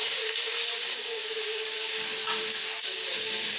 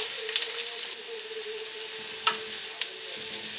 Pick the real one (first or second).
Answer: second